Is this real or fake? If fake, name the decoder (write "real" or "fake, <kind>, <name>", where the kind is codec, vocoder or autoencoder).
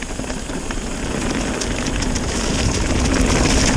real